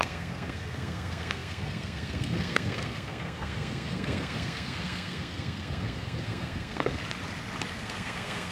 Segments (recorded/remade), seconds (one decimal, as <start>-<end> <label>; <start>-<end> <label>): 0.0-7.0 remade; 7.0-7.7 recorded; 7.7-8.5 remade